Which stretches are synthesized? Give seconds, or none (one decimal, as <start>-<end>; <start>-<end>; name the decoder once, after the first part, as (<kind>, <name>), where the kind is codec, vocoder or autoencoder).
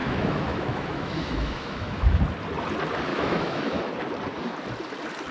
0.0-2.2 (autoencoder, DAC-VAE); 3.1-3.8